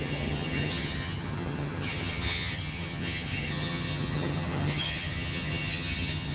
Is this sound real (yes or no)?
no